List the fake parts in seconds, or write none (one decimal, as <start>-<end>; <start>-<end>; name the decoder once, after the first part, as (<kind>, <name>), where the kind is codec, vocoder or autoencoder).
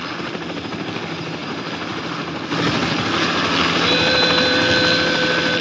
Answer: none